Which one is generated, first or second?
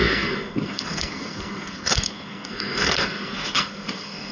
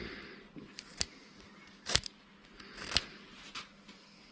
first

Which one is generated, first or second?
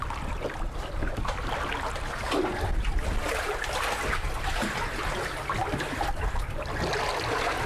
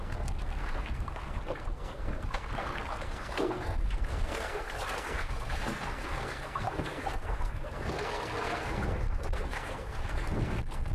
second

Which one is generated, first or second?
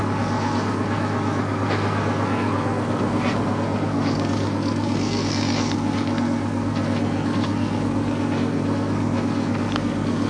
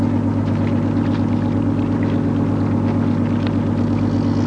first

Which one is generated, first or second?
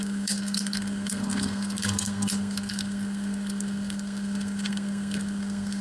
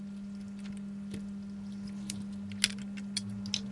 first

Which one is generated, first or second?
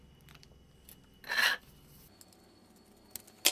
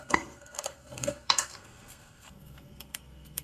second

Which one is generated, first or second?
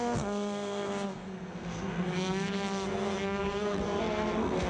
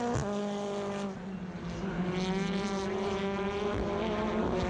first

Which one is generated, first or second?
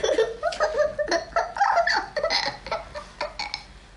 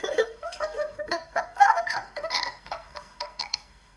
second